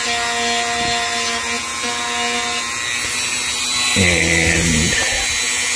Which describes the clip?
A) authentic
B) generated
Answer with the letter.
A